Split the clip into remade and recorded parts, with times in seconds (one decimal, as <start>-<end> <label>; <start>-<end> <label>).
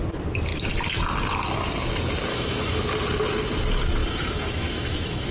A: 0.0-2.3 recorded; 2.3-2.8 remade; 2.8-4.0 recorded; 4.0-5.3 remade